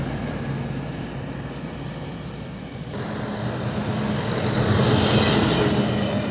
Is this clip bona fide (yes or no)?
yes